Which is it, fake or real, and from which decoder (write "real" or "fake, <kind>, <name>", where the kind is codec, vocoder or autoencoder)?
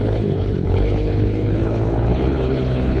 fake, codec, HILCodec